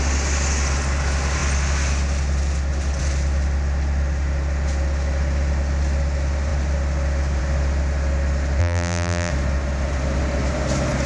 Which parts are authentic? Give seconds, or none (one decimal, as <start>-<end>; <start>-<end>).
0.0-8.6; 9.3-11.1